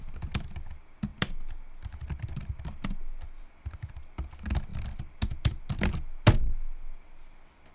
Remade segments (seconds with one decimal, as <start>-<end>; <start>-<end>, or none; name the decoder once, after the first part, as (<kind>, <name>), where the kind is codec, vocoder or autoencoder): none